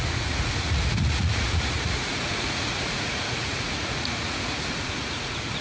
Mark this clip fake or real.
fake